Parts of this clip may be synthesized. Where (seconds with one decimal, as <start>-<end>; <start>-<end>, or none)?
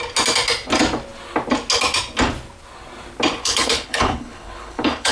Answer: 3.4-5.1